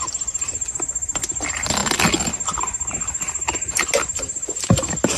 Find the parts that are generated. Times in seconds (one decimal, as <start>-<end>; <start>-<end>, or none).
0.0-1.8